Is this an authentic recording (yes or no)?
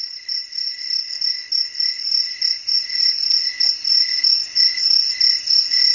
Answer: yes